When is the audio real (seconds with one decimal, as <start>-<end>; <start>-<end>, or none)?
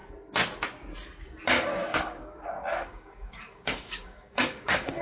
0.0-1.9